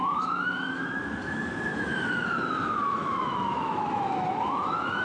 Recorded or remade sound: remade